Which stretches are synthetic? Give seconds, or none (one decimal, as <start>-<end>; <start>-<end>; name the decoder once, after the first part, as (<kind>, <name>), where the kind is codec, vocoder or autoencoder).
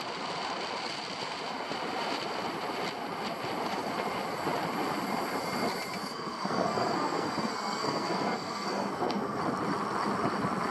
6.0-9.4 (codec, SNAC)